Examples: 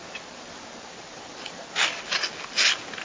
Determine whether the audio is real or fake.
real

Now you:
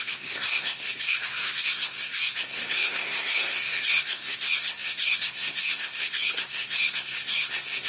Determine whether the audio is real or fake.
fake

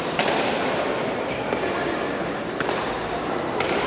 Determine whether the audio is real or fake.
real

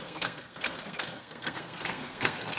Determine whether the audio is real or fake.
fake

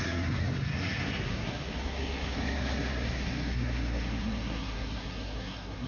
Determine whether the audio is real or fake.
fake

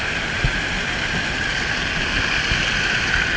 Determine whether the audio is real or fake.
real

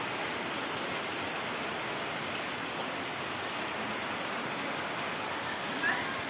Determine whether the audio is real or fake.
real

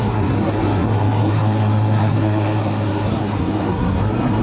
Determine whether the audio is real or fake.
fake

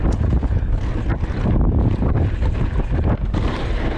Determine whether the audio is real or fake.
real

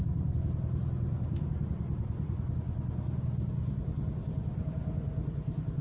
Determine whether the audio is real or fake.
real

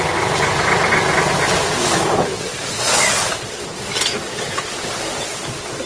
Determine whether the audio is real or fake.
real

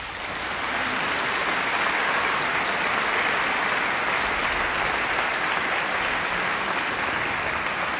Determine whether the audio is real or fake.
real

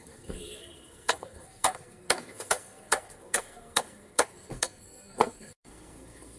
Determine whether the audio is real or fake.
fake